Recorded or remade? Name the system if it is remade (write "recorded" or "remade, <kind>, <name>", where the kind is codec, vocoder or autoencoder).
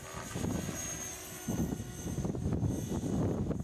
recorded